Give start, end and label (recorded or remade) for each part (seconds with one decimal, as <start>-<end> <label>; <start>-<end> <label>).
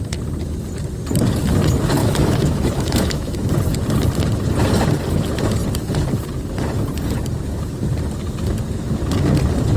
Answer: 0.0-2.0 recorded; 2.0-3.5 remade; 3.5-9.8 recorded